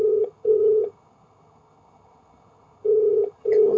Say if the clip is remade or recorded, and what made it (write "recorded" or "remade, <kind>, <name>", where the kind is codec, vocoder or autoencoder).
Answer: remade, vocoder, HiFi-GAN